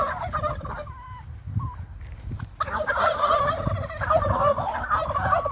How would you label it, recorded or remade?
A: recorded